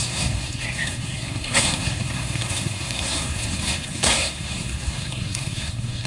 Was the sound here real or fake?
fake